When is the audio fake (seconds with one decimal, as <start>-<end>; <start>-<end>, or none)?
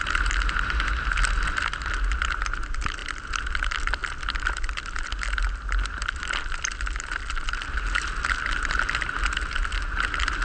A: none